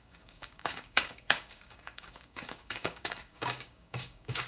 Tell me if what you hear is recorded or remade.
remade